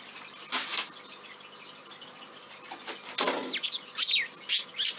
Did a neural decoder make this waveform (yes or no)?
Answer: no